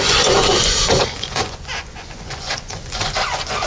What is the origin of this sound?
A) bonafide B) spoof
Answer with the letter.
B